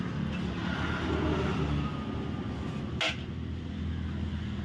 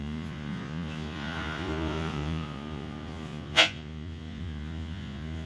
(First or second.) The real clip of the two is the first